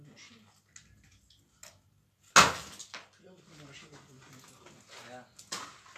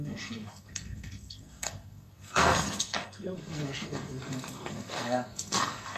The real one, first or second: first